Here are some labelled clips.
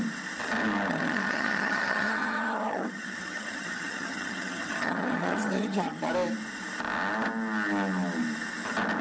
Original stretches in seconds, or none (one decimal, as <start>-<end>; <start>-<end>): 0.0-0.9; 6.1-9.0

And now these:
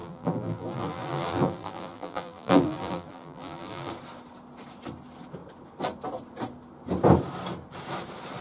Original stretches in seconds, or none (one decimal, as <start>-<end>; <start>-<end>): 3.9-8.4

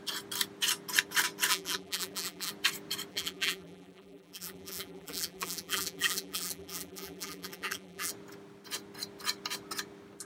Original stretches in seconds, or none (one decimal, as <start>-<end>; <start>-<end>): 0.0-1.5; 2.5-3.1; 8.1-10.2

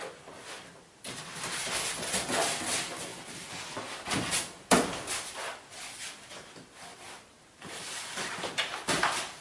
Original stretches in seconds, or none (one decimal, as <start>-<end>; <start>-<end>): 0.0-6.9; 8.5-9.4

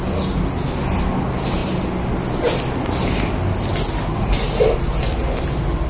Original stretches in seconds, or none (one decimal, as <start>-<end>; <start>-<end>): 0.0-5.9